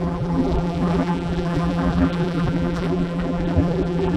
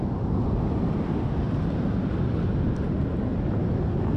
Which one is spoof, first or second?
first